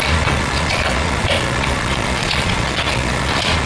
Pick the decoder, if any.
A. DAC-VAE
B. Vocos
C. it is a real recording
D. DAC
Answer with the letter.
B